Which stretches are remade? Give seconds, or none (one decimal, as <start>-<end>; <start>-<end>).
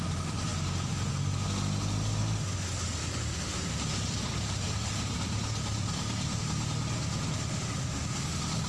0.5-1.1; 3.0-6.4